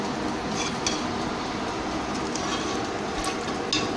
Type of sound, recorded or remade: recorded